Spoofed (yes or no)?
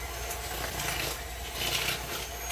no